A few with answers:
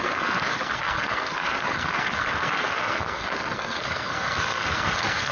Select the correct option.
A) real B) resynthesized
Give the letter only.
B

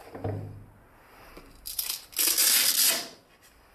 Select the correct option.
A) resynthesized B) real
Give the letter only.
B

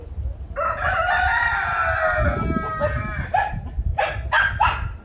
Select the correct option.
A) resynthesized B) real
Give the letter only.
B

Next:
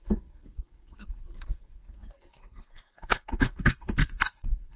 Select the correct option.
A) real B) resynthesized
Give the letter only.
B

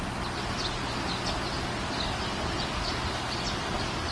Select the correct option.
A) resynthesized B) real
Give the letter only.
B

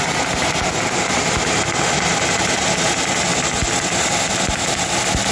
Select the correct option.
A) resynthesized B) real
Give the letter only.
B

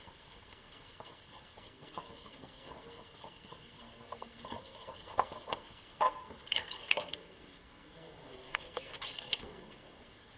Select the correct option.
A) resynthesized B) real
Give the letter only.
A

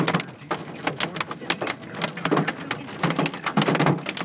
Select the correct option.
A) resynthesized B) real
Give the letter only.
B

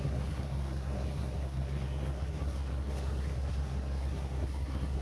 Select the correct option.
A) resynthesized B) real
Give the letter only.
A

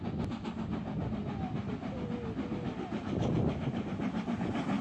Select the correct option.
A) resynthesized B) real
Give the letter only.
B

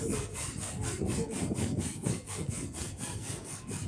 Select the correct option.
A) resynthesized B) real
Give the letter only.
A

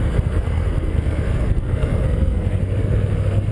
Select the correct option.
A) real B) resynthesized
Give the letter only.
B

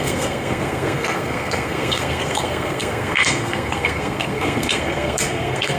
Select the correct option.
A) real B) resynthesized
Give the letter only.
B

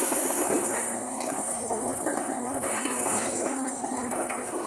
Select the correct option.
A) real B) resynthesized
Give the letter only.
B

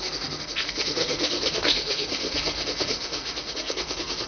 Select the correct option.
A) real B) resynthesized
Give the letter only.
B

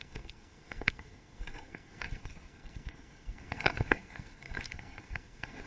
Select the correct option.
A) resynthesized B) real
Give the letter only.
A